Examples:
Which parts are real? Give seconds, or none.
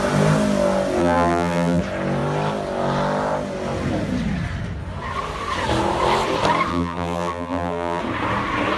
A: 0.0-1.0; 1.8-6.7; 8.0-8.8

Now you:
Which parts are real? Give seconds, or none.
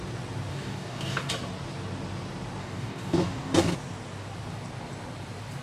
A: 0.0-0.5; 1.3-2.6; 3.7-5.6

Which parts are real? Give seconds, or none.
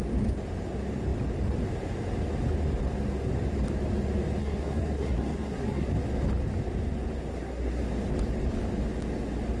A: 0.0-4.4; 5.9-7.3; 7.8-9.6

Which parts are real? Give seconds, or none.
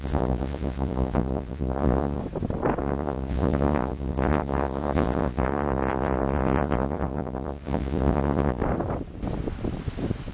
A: 2.2-2.8; 8.6-10.3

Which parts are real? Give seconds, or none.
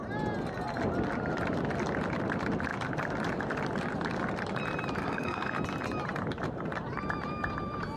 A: 0.0-5.0; 5.5-8.0